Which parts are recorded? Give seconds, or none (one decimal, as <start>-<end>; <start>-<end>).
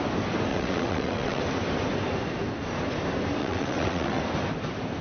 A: 0.0-0.5; 1.4-3.4; 4.2-5.0